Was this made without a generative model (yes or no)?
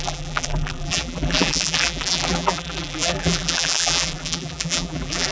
no